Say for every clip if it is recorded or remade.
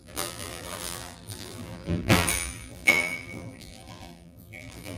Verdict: remade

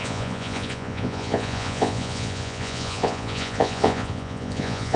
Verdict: remade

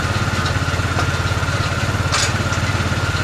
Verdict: remade